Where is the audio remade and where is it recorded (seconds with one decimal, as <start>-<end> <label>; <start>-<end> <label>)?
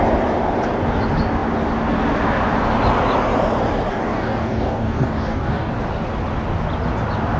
0.0-3.9 recorded; 3.9-5.7 remade; 5.7-7.4 recorded